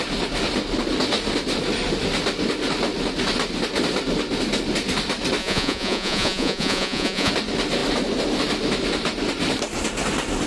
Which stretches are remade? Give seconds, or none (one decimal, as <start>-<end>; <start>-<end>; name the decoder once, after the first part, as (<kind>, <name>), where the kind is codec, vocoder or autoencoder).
5.4-7.3 (vocoder, Vocos)